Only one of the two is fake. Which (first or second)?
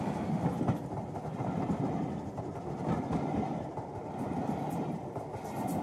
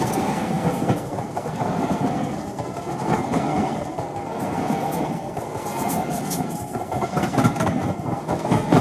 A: second